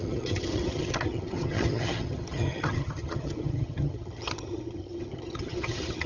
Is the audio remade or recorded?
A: remade